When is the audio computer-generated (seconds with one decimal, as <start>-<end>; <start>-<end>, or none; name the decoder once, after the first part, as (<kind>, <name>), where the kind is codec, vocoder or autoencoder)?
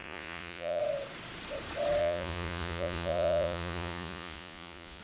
0.0-0.8 (vocoder, Vocos); 2.0-5.0